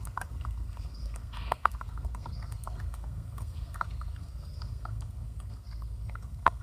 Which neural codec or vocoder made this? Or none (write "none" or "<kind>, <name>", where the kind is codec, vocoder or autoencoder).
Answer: codec, SNAC